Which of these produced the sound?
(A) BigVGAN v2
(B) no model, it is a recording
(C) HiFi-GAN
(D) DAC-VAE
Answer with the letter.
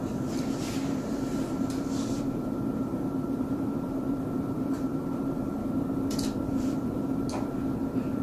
A